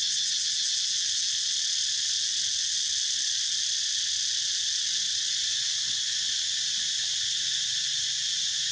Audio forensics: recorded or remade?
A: recorded